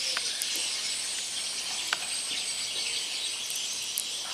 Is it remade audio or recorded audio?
recorded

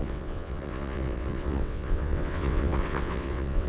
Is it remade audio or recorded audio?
remade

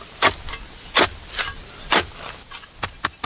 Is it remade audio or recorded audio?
recorded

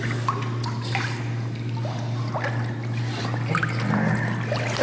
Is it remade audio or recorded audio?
recorded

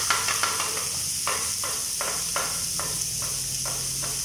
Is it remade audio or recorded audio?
recorded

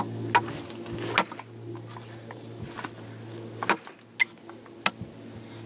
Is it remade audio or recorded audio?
recorded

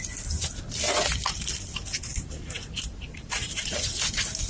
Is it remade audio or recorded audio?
recorded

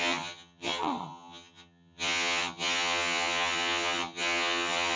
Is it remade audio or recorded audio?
remade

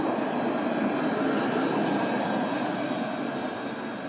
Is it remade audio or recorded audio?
recorded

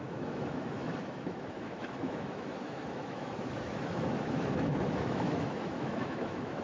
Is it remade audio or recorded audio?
remade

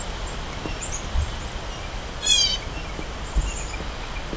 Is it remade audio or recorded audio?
recorded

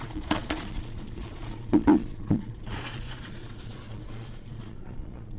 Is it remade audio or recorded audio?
remade